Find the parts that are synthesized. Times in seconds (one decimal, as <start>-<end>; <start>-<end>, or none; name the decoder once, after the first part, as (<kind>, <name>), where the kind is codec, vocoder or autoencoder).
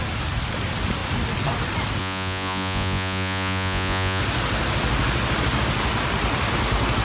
2.0-4.2 (vocoder, Vocos)